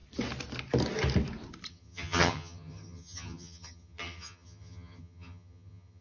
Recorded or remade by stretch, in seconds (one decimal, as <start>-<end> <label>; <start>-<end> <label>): 0.0-1.7 recorded; 1.7-6.0 remade